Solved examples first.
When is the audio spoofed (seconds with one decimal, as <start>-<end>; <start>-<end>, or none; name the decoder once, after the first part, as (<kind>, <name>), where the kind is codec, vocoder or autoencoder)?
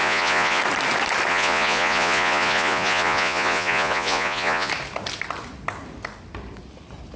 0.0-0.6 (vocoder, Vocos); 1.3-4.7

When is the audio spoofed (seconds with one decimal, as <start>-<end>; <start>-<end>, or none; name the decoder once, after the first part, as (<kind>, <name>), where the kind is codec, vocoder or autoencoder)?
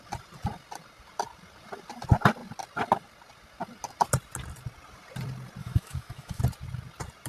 5.6-6.4 (autoencoder, DAC-VAE)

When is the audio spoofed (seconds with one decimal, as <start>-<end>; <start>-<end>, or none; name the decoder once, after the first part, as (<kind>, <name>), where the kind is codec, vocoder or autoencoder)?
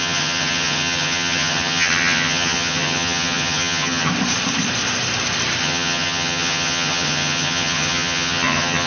0.0-4.1 (vocoder, HiFi-GAN); 5.6-8.9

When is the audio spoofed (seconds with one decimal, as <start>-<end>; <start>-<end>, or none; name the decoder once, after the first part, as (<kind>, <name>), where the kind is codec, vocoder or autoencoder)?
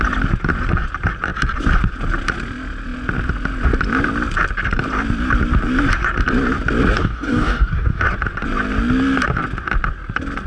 7.0-8.0 (codec, DAC)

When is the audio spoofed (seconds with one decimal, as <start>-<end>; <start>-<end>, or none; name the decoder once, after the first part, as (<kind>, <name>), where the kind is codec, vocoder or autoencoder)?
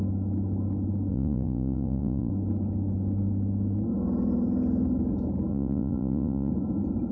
1.1-2.3 (vocoder, Vocos); 5.5-6.5